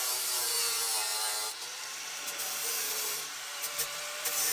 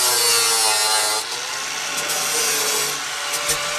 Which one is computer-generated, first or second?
first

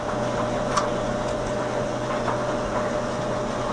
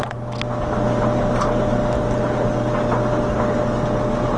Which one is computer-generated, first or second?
first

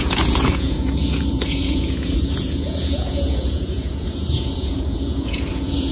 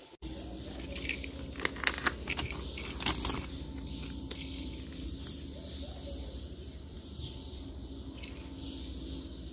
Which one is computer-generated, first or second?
first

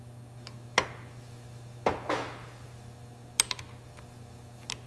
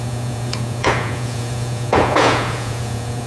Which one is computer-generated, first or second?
second